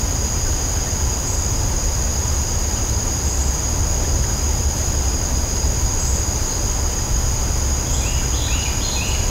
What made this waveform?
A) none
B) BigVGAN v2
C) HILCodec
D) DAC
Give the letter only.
A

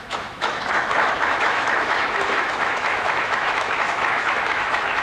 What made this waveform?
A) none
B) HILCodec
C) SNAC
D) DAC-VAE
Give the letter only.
D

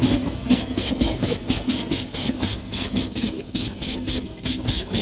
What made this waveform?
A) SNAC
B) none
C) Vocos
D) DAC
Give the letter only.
A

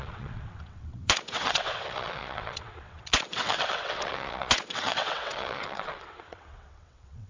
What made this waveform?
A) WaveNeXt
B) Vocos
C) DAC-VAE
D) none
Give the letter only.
A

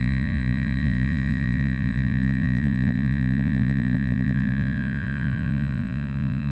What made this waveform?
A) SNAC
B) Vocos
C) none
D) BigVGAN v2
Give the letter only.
B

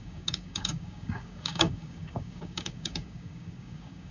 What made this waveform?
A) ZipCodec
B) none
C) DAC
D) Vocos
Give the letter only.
C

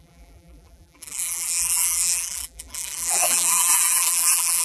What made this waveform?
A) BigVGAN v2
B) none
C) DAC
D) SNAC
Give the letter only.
A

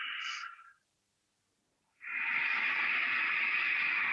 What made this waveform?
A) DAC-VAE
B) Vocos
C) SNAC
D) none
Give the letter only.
D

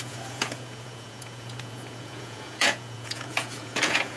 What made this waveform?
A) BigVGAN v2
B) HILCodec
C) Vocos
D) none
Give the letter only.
C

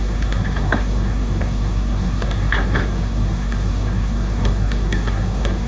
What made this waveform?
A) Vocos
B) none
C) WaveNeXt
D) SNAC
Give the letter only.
D